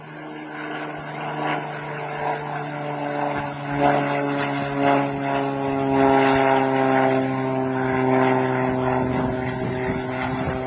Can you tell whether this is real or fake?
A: real